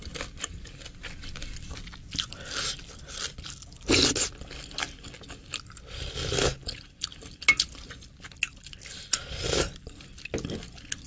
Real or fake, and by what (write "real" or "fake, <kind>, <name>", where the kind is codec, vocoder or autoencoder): real